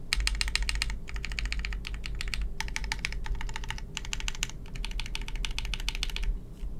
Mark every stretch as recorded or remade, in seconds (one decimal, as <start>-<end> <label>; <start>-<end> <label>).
0.0-6.8 recorded